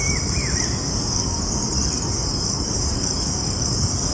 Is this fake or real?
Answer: fake